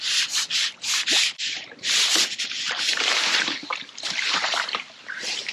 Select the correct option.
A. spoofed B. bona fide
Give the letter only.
A